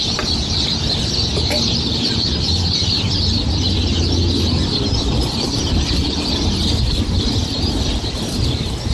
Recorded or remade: recorded